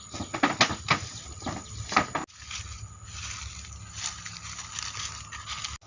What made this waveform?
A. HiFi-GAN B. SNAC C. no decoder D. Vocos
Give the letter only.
C